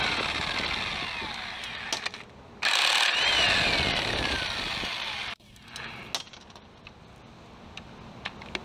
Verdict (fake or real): real